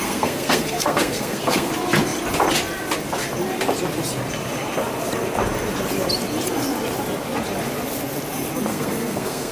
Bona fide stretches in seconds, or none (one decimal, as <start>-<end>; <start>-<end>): 1.7-8.7